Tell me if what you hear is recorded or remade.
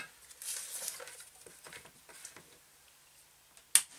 recorded